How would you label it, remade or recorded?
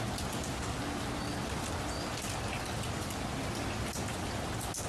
recorded